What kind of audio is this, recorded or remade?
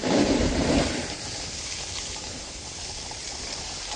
recorded